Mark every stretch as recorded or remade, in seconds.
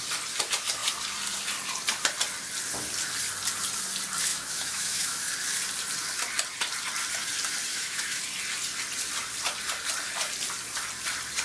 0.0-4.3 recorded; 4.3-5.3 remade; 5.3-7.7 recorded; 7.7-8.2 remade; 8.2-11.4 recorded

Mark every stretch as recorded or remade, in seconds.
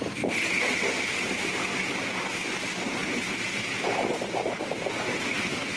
0.0-5.8 recorded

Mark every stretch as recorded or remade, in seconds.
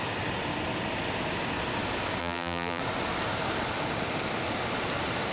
0.0-2.2 recorded; 2.2-2.8 remade; 2.8-5.3 recorded